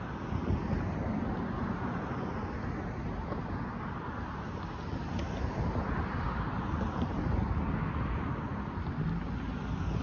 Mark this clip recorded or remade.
recorded